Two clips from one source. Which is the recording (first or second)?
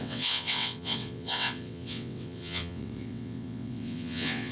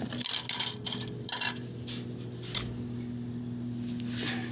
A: second